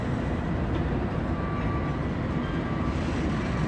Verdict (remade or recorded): recorded